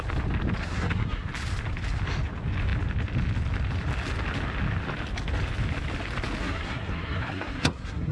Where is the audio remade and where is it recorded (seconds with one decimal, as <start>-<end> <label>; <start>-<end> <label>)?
0.0-0.6 recorded; 0.6-1.3 remade; 1.3-6.4 recorded; 6.4-8.1 remade